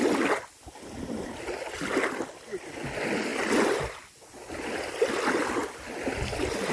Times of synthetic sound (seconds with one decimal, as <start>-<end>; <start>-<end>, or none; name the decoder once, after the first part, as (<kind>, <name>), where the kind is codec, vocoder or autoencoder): none